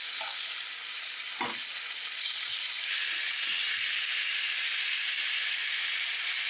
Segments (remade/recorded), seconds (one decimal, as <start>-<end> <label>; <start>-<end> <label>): 0.0-6.5 recorded

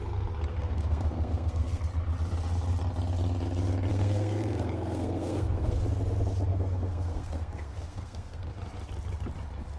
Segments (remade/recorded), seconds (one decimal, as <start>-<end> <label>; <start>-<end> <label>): 0.0-0.5 recorded; 0.5-1.8 remade; 1.8-3.9 recorded; 3.9-5.8 remade; 5.8-6.5 recorded; 6.5-8.5 remade; 8.5-9.8 recorded

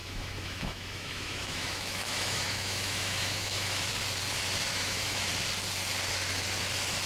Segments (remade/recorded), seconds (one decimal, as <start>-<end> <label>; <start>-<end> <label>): 0.0-3.9 remade; 3.9-4.7 recorded; 4.7-5.3 remade; 5.3-7.1 recorded